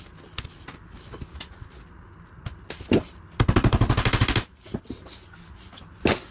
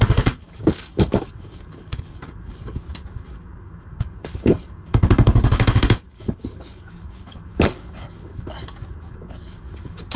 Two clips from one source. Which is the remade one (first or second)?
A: second